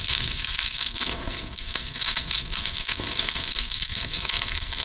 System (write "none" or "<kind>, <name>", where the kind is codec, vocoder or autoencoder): codec, SNAC